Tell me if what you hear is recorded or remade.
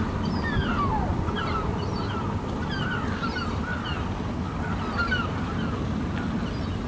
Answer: recorded